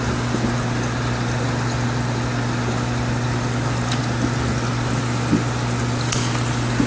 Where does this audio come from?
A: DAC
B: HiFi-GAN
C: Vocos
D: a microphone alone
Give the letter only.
D